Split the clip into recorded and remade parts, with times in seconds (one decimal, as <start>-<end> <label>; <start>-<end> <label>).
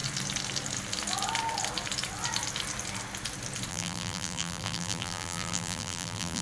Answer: 0.0-3.7 recorded; 3.7-6.4 remade